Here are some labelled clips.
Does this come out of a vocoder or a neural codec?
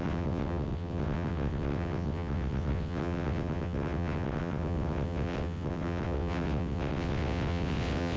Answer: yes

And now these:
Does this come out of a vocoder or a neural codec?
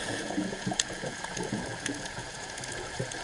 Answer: yes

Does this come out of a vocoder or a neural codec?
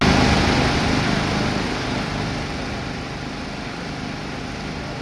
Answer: no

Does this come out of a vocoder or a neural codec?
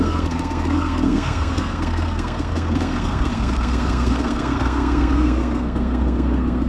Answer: yes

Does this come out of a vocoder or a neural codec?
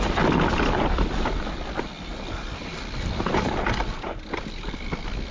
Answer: no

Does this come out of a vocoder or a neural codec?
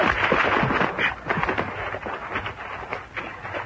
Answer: no